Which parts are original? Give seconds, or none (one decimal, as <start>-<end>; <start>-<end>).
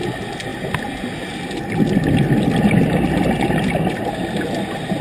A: 0.0-5.0